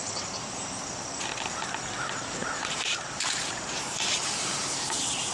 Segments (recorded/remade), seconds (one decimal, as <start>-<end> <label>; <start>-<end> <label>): 0.0-1.8 remade; 1.8-2.4 recorded; 2.4-5.3 remade